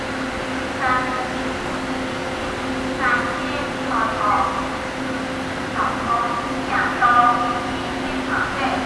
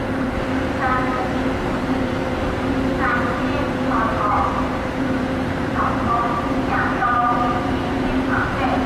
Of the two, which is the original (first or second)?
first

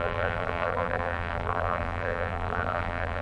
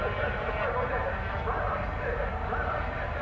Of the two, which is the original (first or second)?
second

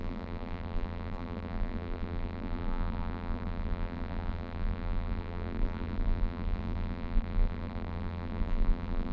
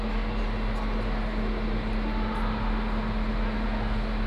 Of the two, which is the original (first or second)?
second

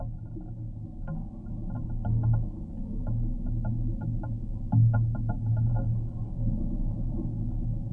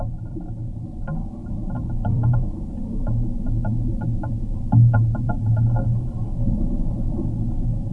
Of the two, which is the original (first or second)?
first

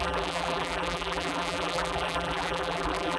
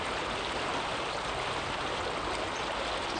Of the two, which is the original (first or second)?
second